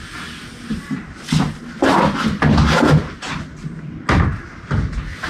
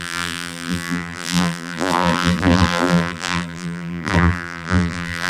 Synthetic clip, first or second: second